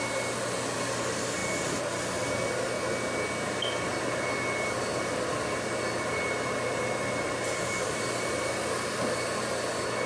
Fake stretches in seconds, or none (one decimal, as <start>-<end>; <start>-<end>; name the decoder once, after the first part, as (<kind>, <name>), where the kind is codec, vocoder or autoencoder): none